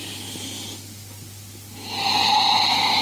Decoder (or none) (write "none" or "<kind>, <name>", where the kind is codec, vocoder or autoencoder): none